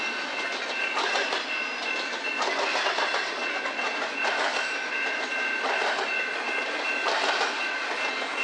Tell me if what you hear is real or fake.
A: real